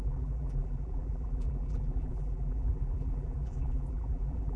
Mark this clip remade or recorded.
remade